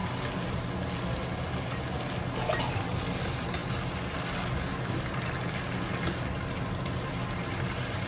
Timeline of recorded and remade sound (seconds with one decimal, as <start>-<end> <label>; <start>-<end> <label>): 0.0-8.1 recorded